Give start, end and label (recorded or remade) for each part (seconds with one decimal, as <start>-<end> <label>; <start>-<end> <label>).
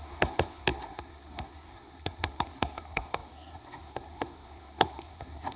0.0-5.6 remade